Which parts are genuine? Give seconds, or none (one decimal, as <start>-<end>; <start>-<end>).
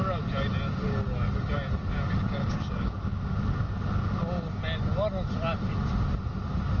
0.0-2.4; 3.2-6.8